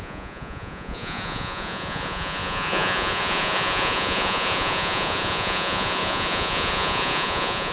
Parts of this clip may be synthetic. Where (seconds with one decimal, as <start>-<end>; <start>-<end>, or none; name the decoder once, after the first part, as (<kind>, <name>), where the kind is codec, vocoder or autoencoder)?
0.0-7.7 (vocoder, Vocos)